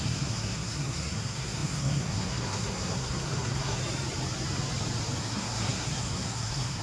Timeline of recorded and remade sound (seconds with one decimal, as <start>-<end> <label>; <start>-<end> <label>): 0.0-3.8 remade; 3.8-5.2 recorded; 5.2-6.8 remade

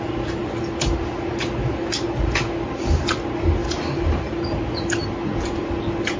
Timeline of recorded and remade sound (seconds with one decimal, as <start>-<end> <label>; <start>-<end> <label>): 0.0-6.2 recorded

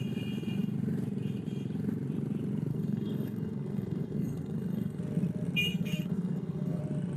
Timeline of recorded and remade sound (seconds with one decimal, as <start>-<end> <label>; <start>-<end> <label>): 0.0-2.7 recorded; 2.7-5.0 remade; 5.0-5.6 recorded; 5.6-6.8 remade; 6.8-7.2 recorded

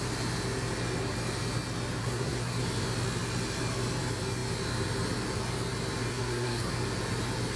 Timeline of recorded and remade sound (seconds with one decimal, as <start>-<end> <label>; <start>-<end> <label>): 0.0-2.0 recorded; 2.0-2.6 remade; 2.6-6.1 recorded; 6.1-6.7 remade; 6.7-7.6 recorded